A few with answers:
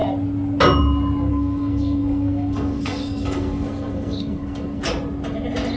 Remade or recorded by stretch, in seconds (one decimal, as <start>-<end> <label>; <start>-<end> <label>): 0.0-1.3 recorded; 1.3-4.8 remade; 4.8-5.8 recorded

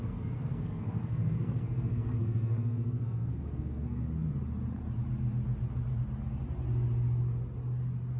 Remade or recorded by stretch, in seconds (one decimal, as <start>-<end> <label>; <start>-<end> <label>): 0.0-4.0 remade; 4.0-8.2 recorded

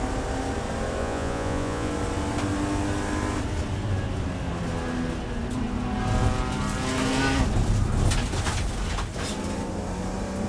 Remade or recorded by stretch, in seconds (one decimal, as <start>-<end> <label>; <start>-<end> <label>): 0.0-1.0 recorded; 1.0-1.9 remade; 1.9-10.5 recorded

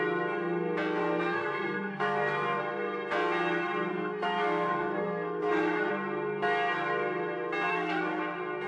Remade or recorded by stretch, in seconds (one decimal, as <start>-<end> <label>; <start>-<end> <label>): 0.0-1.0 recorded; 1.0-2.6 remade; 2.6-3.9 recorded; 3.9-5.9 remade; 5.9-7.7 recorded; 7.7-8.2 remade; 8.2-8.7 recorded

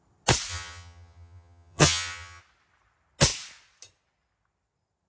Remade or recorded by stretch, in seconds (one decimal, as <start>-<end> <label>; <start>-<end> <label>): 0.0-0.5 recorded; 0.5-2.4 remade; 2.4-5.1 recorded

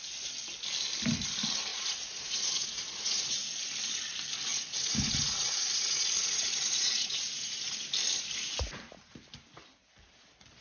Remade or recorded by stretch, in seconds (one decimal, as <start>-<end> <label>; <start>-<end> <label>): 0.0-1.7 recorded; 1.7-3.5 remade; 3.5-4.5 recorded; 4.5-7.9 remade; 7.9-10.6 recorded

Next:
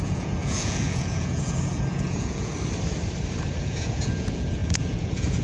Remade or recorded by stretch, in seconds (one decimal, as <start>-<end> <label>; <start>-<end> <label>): 0.0-2.5 remade; 2.5-3.6 recorded; 3.6-5.4 remade

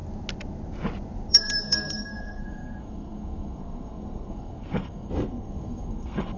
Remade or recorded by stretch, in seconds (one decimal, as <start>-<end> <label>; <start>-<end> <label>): 0.0-1.3 recorded; 1.3-6.4 remade